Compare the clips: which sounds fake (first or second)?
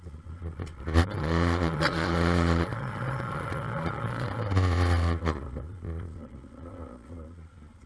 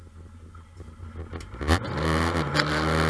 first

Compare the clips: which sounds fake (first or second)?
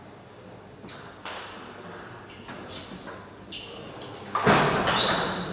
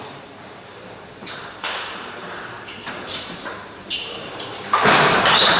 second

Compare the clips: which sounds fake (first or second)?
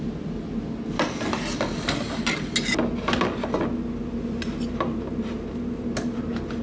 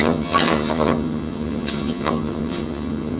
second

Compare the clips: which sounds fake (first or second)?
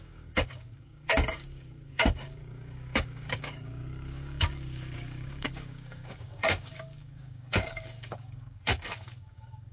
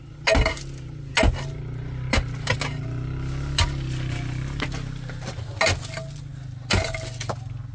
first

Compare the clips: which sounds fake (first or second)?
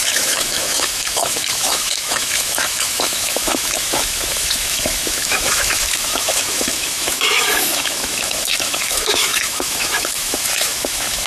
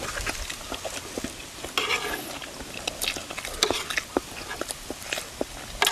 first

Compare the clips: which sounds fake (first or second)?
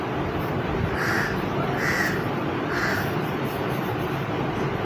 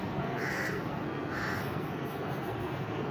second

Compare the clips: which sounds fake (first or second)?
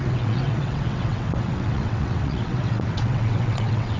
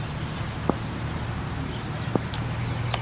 first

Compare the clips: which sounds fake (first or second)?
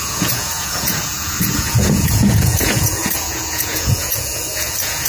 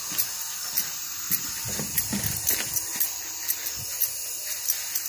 first